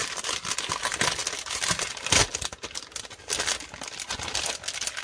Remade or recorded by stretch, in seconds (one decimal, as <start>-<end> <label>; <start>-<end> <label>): 0.0-5.0 recorded

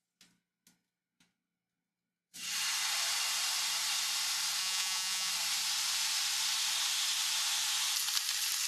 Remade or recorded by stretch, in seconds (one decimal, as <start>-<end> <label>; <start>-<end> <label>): 0.0-4.6 recorded; 4.6-5.3 remade; 5.3-8.7 recorded

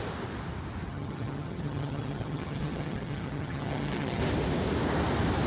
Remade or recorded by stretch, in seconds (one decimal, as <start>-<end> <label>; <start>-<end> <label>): 0.0-0.9 recorded; 0.9-4.2 remade; 4.2-5.5 recorded

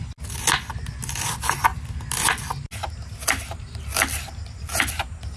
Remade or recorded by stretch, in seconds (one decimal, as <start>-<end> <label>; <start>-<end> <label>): 0.0-5.4 recorded

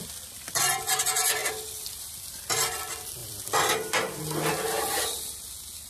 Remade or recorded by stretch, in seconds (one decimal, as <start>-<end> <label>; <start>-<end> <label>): 0.0-1.4 recorded; 1.4-2.5 remade; 2.5-3.2 recorded; 3.2-4.2 remade; 4.2-5.9 recorded

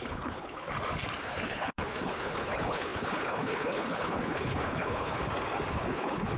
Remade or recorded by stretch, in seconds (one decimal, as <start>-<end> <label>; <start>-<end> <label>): 0.0-0.7 remade; 0.7-1.2 recorded; 1.2-5.2 remade; 5.2-5.7 recorded; 5.7-6.4 remade

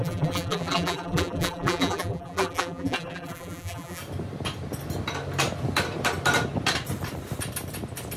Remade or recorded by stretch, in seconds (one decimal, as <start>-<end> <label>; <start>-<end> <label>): 0.0-4.0 remade; 4.0-8.2 recorded